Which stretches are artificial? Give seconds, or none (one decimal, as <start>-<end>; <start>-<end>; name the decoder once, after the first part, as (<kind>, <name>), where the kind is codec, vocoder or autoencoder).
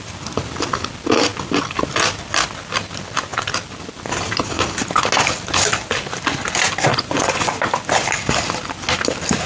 6.9-7.6 (vocoder, Vocos)